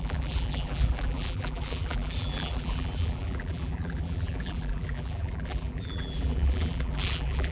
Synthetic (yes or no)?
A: yes